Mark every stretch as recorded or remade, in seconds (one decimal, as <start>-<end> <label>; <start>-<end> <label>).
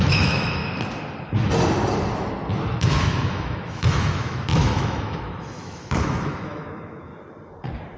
0.0-0.6 remade; 0.6-2.7 recorded; 2.7-7.1 remade; 7.1-8.0 recorded